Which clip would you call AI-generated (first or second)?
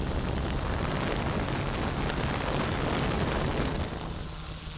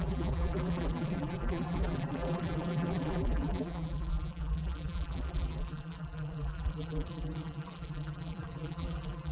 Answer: second